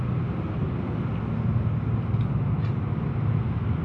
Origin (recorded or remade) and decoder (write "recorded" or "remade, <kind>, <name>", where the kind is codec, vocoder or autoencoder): recorded